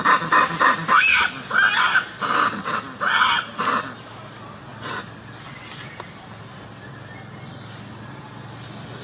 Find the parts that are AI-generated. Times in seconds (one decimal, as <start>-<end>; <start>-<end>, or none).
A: none